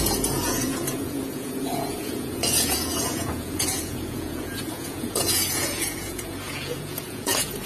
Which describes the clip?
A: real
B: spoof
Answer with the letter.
B